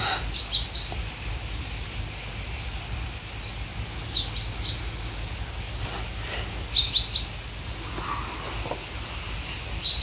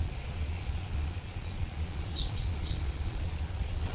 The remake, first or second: second